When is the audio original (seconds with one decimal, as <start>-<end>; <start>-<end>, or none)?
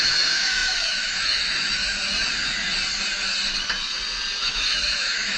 2.0-4.4